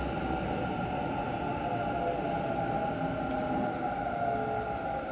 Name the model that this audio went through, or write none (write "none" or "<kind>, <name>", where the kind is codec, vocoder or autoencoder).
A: none